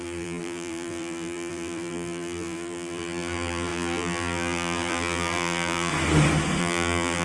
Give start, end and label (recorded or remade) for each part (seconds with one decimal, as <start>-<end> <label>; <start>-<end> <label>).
0.0-5.9 remade; 5.9-6.6 recorded; 6.6-7.2 remade